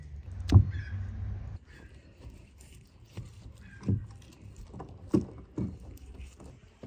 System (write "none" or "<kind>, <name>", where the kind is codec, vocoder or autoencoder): none